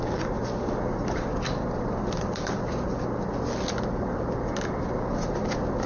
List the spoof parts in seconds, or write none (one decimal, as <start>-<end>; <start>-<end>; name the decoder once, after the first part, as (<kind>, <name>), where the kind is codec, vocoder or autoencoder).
none